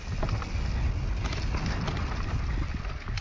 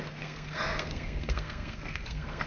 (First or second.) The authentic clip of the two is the first